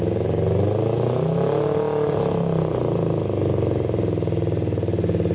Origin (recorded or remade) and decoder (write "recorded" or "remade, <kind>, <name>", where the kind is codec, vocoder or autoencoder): recorded